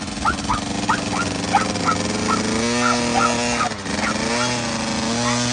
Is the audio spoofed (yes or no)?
no